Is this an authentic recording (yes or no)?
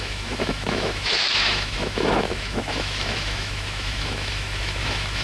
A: no